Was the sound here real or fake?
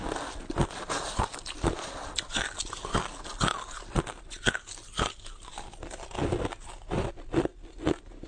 real